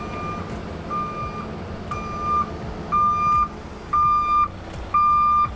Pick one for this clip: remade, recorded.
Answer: recorded